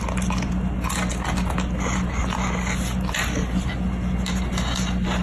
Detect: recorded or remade recorded